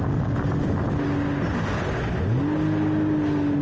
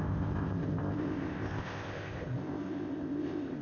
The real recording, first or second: first